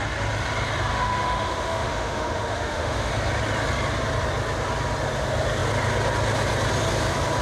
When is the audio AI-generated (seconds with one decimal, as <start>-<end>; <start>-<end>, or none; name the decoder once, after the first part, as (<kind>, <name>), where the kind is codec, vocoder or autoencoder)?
0.9-3.1 (autoencoder, DAC-VAE)